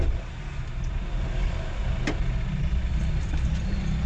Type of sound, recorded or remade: recorded